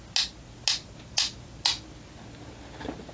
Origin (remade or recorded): recorded